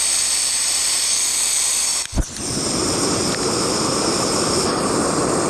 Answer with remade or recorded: recorded